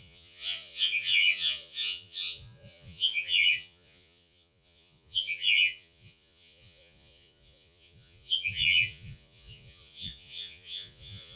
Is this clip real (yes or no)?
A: no